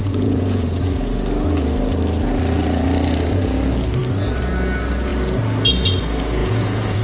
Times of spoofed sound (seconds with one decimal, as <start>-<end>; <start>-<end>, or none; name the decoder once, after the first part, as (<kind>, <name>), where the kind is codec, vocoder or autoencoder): 0.0-1.1 (vocoder, Vocos); 6.4-7.0